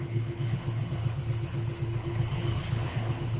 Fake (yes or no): yes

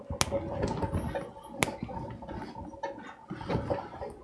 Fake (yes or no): no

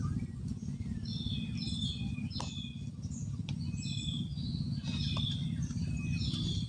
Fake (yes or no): no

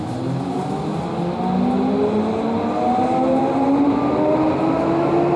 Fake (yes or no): no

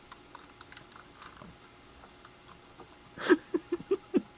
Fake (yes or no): no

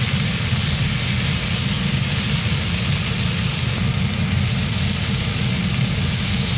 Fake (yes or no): no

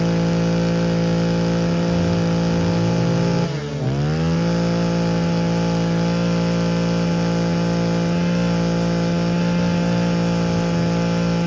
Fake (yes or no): no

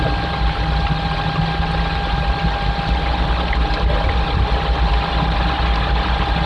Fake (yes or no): no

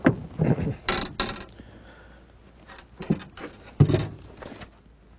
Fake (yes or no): no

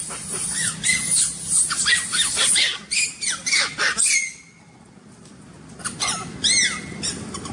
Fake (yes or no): no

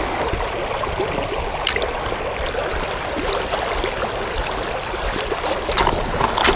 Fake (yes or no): no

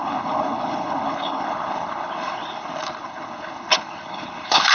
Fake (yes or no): yes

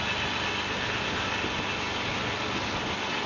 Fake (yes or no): no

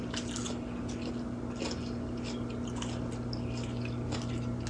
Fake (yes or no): no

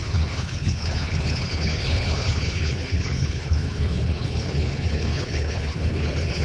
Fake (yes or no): yes